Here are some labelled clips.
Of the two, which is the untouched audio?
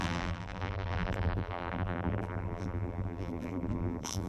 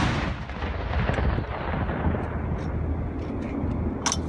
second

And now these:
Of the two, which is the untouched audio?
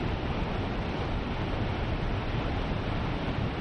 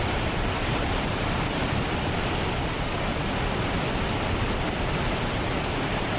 first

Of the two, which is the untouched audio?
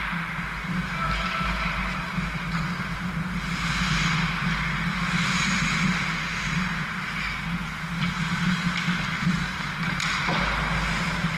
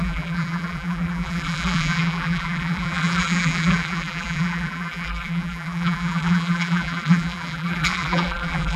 first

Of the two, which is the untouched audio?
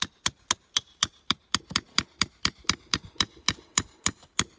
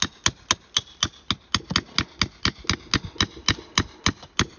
second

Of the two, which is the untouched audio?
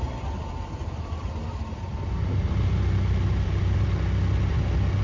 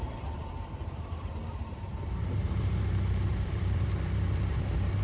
first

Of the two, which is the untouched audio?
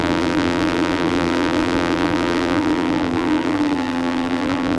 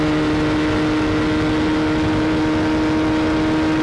second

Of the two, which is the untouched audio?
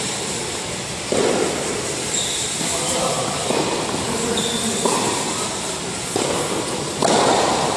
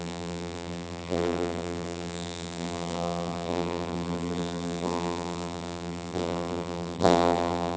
first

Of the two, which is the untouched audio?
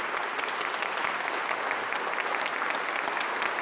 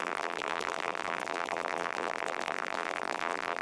first